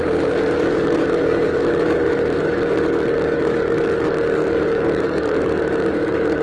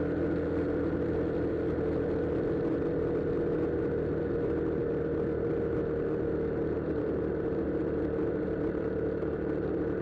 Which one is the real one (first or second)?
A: second